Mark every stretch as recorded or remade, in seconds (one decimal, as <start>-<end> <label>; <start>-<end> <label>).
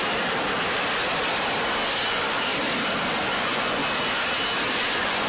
0.0-2.1 recorded; 2.1-2.5 remade; 2.5-3.3 recorded; 3.3-3.8 remade; 3.8-4.7 recorded; 4.7-5.3 remade